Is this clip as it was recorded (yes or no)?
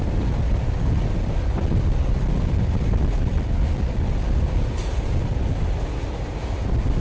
yes